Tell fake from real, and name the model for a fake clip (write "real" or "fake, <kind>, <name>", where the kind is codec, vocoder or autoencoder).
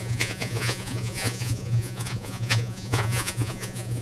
fake, vocoder, Vocos